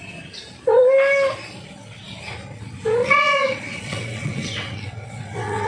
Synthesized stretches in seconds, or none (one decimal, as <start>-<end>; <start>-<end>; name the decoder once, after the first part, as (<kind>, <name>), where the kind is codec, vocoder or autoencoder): 3.0-5.7 (vocoder, WaveNeXt)